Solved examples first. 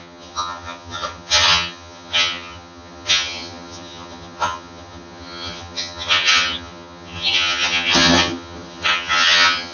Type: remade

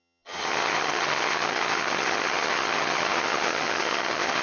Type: remade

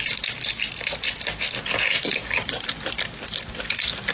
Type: recorded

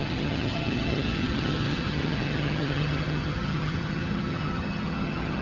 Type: remade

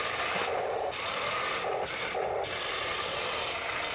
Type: recorded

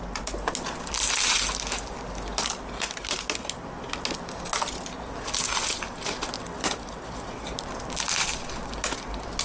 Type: recorded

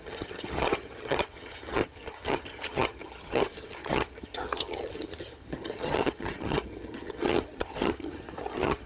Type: remade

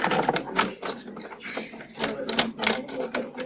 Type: recorded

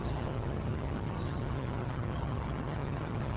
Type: remade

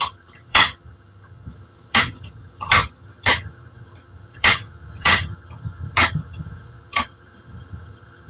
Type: remade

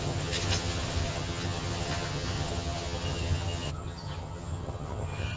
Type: remade